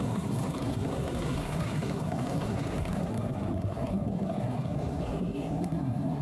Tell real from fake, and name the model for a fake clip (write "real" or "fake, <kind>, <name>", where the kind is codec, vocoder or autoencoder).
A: fake, codec, SNAC